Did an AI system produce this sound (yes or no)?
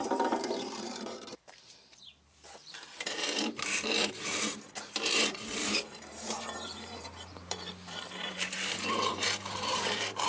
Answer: yes